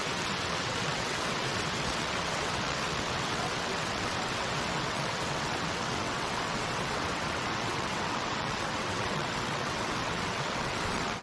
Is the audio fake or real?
fake